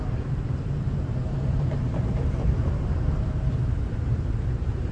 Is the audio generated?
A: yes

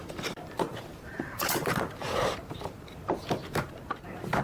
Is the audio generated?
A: yes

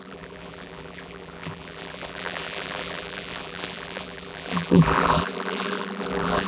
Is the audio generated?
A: yes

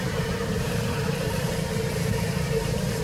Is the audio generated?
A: yes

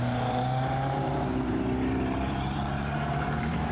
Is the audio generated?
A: yes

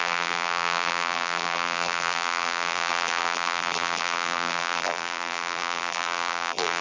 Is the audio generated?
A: yes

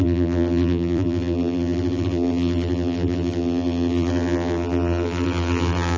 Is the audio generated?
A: yes